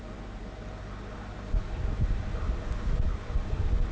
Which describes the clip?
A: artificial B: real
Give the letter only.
B